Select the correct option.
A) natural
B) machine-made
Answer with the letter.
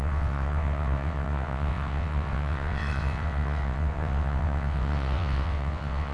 B